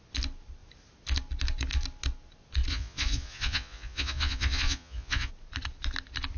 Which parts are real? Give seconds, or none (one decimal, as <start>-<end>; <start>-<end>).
0.0-2.7; 5.3-6.4